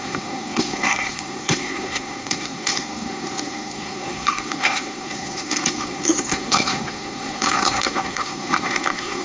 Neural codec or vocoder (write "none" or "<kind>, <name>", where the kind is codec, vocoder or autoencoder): codec, SNAC